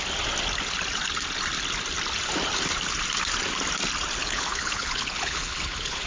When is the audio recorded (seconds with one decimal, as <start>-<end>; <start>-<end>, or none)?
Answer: 0.0-4.2